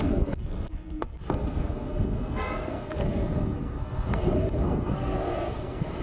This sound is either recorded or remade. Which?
remade